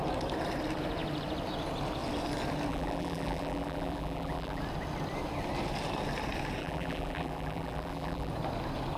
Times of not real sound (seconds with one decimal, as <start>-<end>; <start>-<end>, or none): 2.7-4.6; 6.6-8.3